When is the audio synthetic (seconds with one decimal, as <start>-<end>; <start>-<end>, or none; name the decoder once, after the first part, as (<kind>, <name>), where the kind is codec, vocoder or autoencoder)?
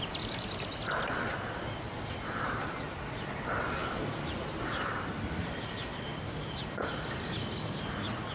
none